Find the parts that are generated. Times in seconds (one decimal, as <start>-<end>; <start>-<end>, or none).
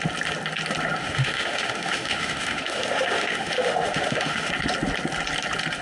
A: 1.0-4.5